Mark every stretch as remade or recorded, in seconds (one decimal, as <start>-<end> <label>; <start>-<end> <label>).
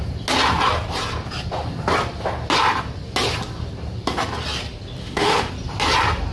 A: 0.0-5.0 recorded; 5.0-5.5 remade; 5.5-6.3 recorded